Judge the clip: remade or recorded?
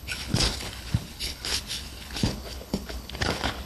remade